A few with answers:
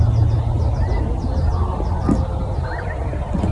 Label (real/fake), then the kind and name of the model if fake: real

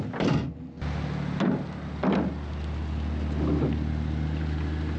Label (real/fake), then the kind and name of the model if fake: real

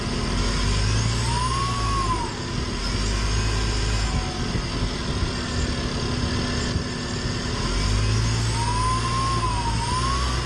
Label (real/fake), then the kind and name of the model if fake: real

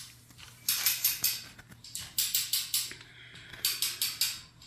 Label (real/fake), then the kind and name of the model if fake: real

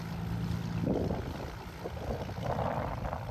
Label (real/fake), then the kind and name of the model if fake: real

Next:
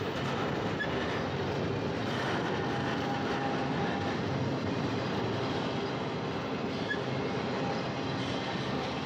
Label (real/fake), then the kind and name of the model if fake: real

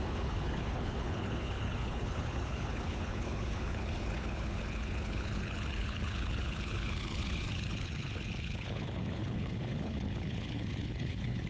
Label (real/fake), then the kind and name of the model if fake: fake, codec, HILCodec